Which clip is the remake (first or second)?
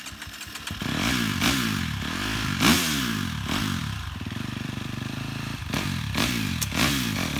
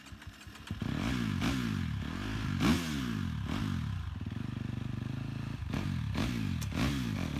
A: first